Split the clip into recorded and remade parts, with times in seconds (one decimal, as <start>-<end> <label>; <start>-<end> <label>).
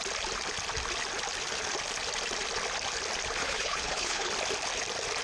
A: 0.0-3.4 recorded; 3.4-4.3 remade; 4.3-5.2 recorded